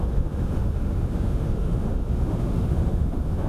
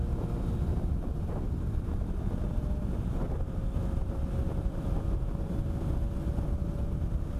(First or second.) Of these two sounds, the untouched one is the second